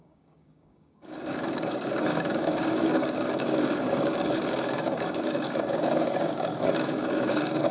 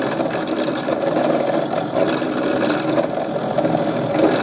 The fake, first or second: first